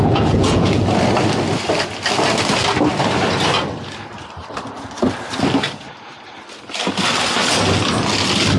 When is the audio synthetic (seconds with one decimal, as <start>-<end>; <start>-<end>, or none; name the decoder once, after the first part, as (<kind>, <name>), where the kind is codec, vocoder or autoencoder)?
0.0-0.8 (vocoder, Vocos)